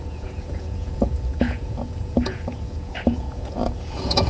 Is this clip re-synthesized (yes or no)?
yes